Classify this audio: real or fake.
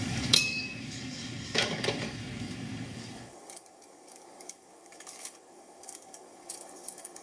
fake